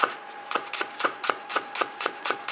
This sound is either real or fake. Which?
fake